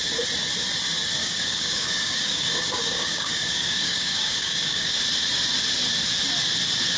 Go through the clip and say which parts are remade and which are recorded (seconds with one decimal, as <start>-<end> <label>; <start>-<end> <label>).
0.0-1.2 recorded; 1.2-5.0 remade; 5.0-7.0 recorded

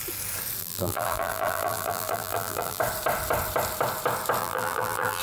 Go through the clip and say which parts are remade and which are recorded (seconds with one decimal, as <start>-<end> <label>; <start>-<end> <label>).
0.0-0.6 recorded; 0.6-2.8 remade; 2.8-4.4 recorded; 4.4-5.2 remade

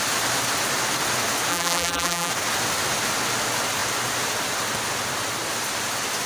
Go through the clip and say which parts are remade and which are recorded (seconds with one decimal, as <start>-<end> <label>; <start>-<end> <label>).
0.0-1.5 recorded; 1.5-2.3 remade; 2.3-6.3 recorded

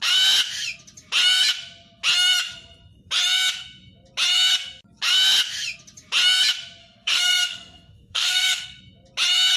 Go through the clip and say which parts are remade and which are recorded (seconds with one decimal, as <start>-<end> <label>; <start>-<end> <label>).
0.0-6.8 recorded; 6.8-8.8 remade; 8.8-9.6 recorded